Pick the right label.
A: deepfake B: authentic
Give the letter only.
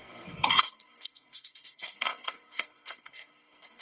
A